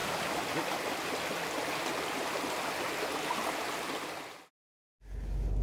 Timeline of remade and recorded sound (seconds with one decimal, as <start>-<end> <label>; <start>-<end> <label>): 0.0-5.6 recorded